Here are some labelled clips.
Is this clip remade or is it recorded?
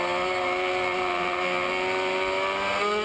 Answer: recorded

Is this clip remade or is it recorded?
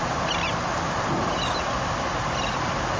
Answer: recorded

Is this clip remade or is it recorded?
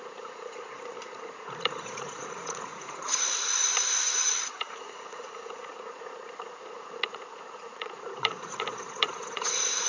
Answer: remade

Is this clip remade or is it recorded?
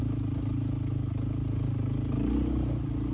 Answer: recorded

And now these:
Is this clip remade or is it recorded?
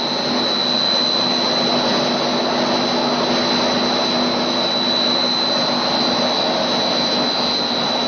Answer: recorded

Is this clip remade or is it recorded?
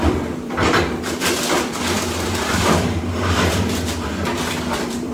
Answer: remade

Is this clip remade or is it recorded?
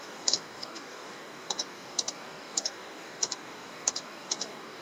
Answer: remade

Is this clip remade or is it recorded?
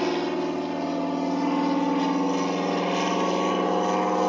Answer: recorded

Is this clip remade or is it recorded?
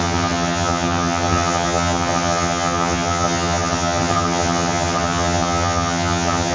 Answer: remade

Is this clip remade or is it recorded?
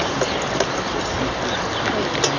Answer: recorded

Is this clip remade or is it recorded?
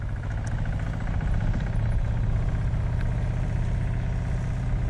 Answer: recorded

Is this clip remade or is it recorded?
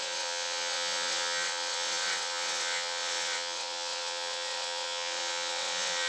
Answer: remade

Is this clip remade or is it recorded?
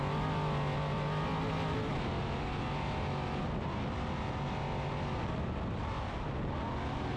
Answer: recorded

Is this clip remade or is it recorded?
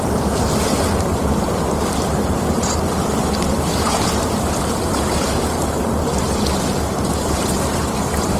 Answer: remade